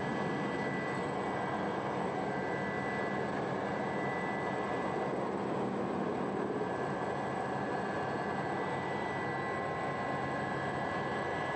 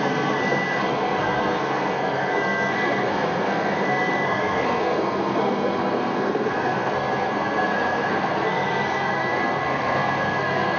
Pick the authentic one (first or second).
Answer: first